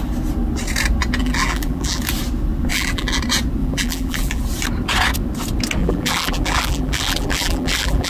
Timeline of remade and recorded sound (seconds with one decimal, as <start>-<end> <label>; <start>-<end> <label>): 0.0-1.2 recorded; 1.2-2.0 remade; 2.0-2.7 recorded; 2.7-3.2 remade; 3.2-3.6 recorded; 3.6-4.4 remade; 4.4-5.8 recorded; 5.8-8.1 remade